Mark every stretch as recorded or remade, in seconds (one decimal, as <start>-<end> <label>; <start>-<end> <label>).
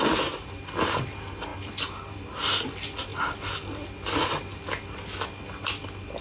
0.0-6.2 recorded